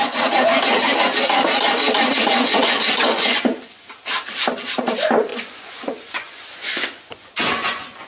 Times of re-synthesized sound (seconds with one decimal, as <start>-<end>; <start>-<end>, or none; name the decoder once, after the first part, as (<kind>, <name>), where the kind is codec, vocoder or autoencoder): 2.2-3.9 (vocoder, Vocos); 5.3-8.1